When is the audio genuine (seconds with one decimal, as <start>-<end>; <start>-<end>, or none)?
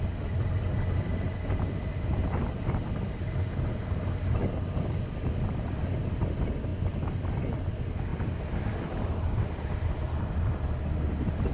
0.0-11.5